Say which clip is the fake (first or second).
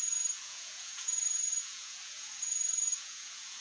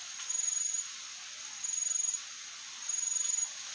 first